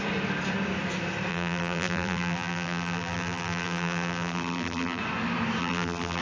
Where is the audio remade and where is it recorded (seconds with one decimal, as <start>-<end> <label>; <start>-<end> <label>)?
0.0-1.3 recorded; 1.3-5.0 remade; 5.0-5.6 recorded; 5.6-6.2 remade